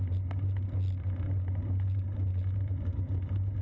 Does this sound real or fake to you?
real